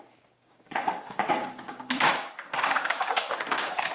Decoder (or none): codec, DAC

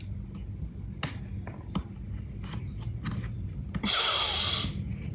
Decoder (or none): none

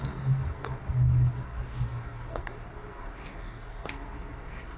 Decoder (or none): codec, SNAC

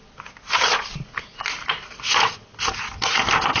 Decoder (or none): none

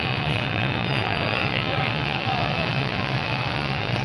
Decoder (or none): vocoder, WaveNeXt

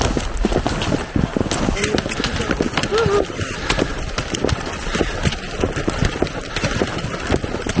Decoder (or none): none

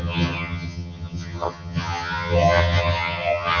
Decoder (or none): vocoder, HiFi-GAN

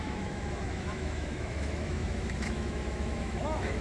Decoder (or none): autoencoder, DAC-VAE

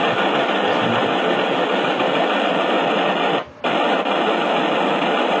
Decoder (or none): vocoder, BigVGAN v2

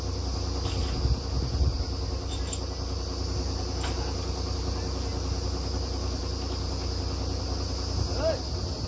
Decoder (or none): none